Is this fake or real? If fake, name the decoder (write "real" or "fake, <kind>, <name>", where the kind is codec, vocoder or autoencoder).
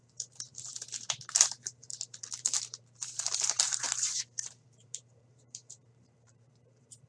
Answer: fake, vocoder, BigVGAN v2